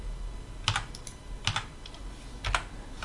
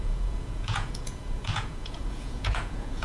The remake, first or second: second